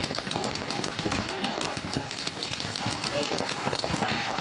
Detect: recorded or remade remade